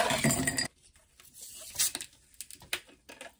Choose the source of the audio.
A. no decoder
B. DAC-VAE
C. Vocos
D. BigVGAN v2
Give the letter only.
A